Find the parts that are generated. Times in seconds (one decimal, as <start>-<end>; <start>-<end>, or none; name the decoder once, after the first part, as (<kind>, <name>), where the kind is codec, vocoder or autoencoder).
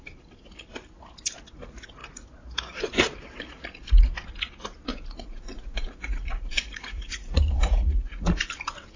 4.9-8.4 (vocoder, Vocos)